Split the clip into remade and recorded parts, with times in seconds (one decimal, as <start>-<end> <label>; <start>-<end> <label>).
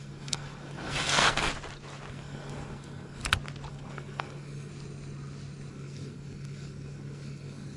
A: 0.0-1.5 remade; 1.5-2.1 recorded; 2.1-3.2 remade; 3.2-3.7 recorded; 3.7-4.7 remade; 4.7-5.7 recorded; 5.7-7.8 remade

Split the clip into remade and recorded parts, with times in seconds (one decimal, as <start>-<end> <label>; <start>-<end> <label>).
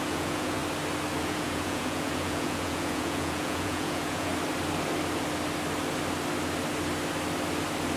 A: 0.0-0.6 remade; 0.6-1.2 recorded; 1.2-4.3 remade; 4.3-8.0 recorded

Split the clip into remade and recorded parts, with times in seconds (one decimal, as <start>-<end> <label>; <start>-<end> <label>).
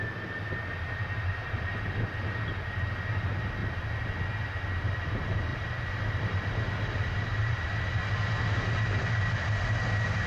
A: 0.0-3.6 recorded; 3.6-4.2 remade; 4.2-5.5 recorded; 5.5-6.5 remade; 6.5-10.3 recorded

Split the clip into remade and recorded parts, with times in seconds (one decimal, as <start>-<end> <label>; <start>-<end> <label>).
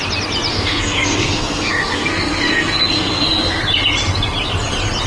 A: 0.0-0.5 recorded; 0.5-3.6 remade; 3.6-5.1 recorded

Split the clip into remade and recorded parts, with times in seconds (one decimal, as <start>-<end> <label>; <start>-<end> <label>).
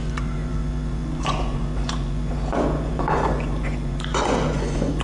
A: 0.0-5.0 remade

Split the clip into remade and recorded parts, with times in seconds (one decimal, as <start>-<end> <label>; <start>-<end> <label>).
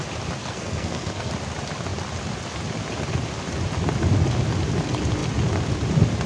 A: 0.0-0.4 recorded; 0.4-1.3 remade; 1.3-6.3 recorded